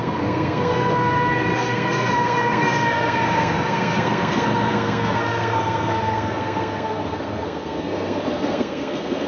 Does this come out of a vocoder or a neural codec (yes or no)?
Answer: yes